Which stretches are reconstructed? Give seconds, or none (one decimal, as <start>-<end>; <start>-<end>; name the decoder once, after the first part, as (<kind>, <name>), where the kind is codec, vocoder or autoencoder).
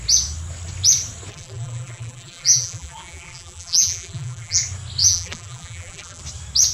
1.3-4.6 (vocoder, BigVGAN v2); 5.0-6.2